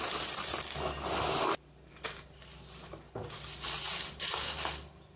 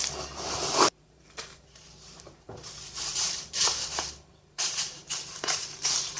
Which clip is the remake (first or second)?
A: second